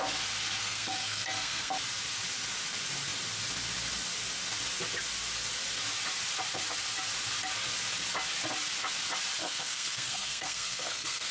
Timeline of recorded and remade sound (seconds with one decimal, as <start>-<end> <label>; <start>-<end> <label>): 0.0-0.6 recorded; 0.6-1.7 remade; 1.7-9.4 recorded; 9.4-11.3 remade